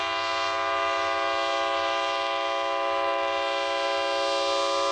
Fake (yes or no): no